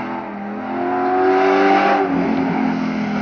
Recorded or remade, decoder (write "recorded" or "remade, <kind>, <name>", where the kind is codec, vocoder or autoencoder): recorded